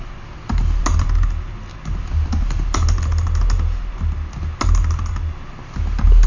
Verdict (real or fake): real